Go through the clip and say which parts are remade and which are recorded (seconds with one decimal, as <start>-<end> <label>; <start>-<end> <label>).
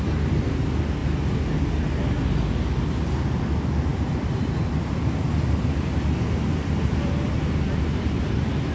0.0-3.9 recorded; 3.9-7.3 remade; 7.3-8.7 recorded